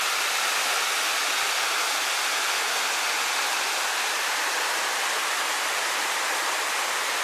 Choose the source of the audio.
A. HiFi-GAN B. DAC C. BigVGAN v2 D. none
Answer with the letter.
D